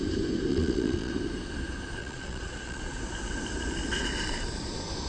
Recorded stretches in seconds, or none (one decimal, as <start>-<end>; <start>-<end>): 0.0-0.5; 1.1-2.0; 3.0-5.1

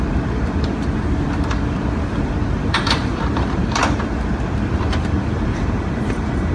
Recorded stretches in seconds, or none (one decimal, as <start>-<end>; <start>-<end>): 3.8-4.8

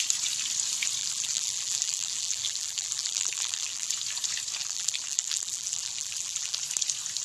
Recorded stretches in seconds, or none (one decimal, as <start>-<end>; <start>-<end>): 0.0-1.0; 3.9-4.6; 6.6-7.2

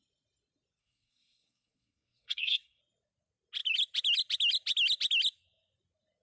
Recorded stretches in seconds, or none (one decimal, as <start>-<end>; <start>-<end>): 0.0-0.8; 2.8-6.2

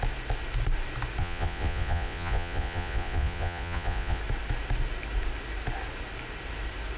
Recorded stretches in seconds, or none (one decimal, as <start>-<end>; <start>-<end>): 0.0-1.2; 4.2-7.0

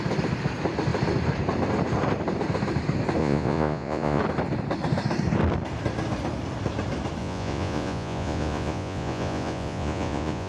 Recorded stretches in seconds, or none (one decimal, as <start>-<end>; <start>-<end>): 0.0-3.2; 4.2-7.2

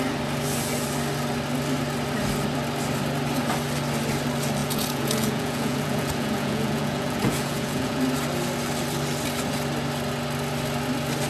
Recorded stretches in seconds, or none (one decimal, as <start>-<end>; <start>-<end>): 0.0-4.6; 8.0-11.3